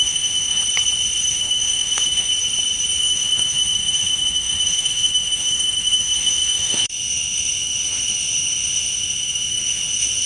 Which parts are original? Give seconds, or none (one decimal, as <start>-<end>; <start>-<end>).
0.6-1.3; 2.3-3.0